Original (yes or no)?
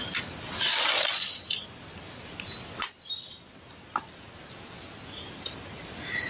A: yes